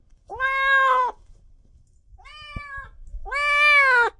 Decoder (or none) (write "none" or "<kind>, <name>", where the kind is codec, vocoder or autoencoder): none